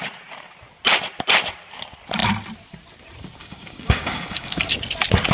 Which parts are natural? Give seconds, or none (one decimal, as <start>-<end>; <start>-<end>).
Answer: 0.0-3.4; 4.7-5.3